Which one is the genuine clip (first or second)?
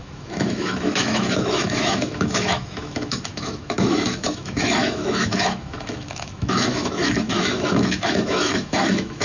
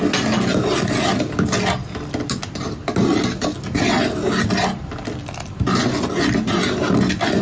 second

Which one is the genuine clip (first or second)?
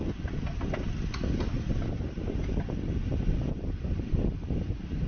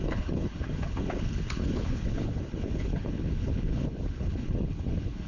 first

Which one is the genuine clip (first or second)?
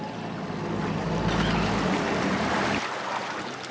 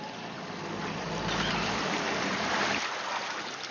first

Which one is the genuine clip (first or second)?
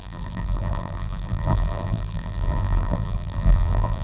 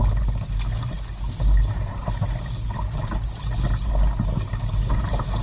second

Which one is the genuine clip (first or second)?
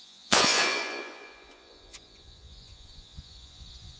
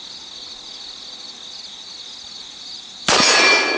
second